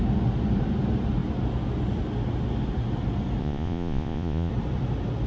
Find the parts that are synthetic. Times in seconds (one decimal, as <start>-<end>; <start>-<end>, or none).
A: 3.4-4.5